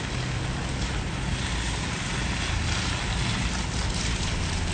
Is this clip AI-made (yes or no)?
no